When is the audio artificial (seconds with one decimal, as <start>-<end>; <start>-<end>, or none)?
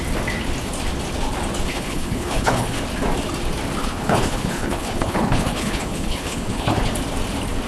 1.7-2.8; 3.8-6.9